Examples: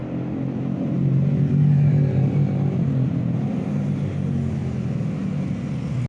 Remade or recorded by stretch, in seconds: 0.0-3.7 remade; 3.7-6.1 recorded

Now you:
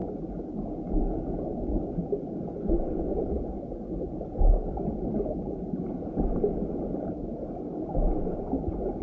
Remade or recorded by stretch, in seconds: 0.0-9.0 recorded

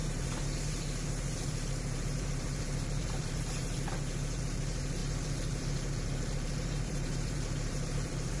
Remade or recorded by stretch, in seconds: 0.0-8.4 remade

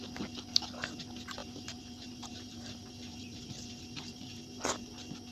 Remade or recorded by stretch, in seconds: 0.0-1.4 recorded; 1.4-4.6 remade; 4.6-5.3 recorded

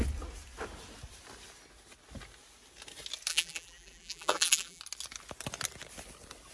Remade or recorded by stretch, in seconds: 0.0-3.3 recorded; 3.3-4.8 remade; 4.8-6.5 recorded